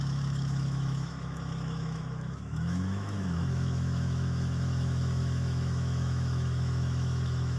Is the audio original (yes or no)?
no